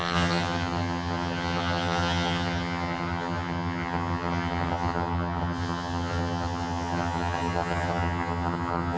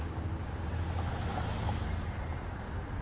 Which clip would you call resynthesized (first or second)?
first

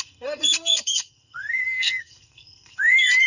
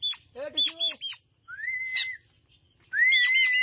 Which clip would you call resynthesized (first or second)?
first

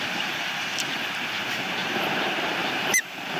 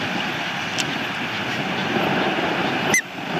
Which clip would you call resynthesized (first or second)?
first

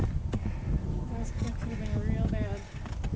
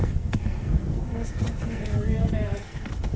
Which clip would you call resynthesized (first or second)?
second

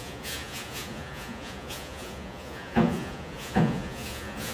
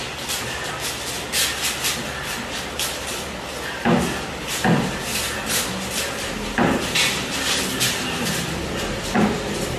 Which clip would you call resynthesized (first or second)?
first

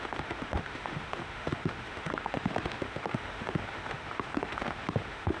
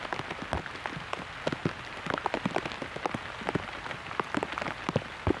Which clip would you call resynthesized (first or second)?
first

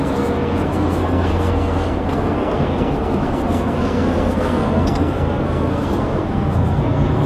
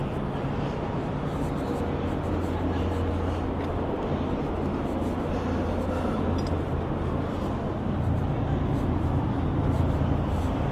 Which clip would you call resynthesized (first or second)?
first